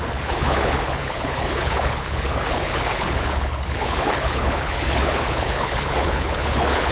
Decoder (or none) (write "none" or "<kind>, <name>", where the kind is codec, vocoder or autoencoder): codec, HILCodec